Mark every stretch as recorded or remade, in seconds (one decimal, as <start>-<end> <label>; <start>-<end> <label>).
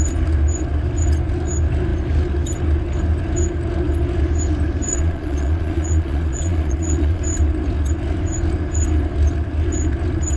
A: 0.0-4.9 recorded; 4.9-7.2 remade; 7.2-10.4 recorded